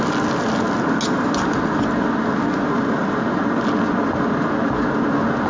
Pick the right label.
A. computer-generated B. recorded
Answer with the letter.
B